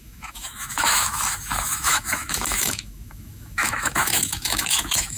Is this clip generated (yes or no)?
yes